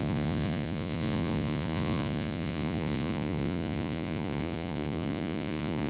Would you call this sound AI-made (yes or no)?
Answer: yes